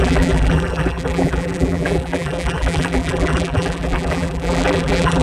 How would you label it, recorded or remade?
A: remade